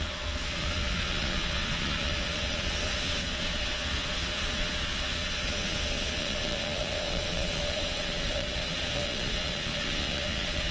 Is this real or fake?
fake